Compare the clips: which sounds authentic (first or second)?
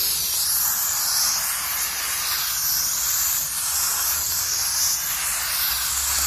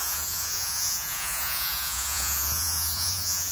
first